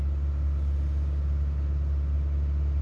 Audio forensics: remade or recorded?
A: recorded